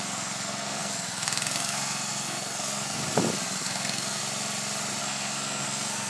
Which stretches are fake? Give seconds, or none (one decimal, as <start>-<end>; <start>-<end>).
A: 0.0-3.0; 3.6-4.2; 5.0-6.1